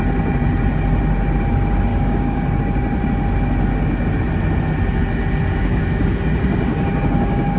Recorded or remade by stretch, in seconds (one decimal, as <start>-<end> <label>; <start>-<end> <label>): 0.0-1.9 recorded; 1.9-2.6 remade; 2.6-5.6 recorded; 5.6-7.6 remade